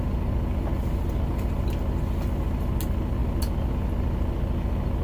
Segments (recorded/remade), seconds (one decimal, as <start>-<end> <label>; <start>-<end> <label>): 0.0-5.0 recorded